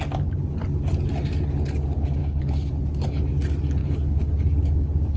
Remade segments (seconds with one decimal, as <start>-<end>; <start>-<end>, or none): 2.2-2.7; 3.8-4.3